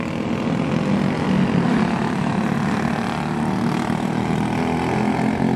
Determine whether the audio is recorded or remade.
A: recorded